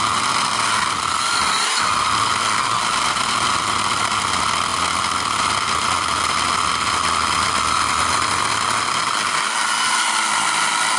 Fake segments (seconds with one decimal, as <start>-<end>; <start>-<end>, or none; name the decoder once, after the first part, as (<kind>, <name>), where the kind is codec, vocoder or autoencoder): none